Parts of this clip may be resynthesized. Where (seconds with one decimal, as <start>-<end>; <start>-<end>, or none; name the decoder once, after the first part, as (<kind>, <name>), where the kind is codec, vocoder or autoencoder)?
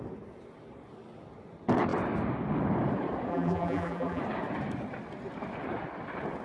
3.3-4.2 (vocoder, BigVGAN v2)